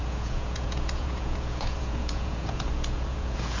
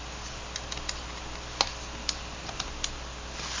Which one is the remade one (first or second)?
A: first